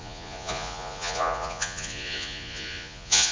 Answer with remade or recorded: remade